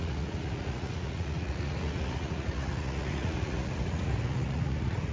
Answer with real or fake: fake